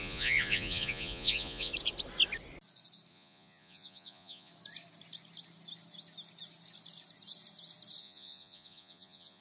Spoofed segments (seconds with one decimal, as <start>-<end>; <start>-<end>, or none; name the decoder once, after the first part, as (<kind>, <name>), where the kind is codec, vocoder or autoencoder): 0.0-1.7 (vocoder, Vocos); 3.1-4.5; 8.0-9.4